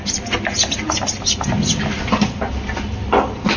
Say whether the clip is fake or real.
real